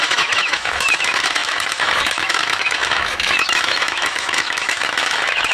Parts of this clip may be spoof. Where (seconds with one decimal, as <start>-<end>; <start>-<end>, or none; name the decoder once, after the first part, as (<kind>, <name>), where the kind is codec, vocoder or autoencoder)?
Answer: 0.0-5.5 (autoencoder, DAC-VAE)